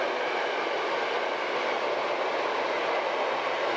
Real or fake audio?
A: real